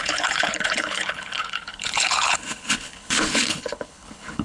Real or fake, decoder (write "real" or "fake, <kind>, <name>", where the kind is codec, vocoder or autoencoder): fake, codec, HILCodec